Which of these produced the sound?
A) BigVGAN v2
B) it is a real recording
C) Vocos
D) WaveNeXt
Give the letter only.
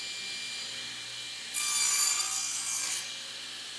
B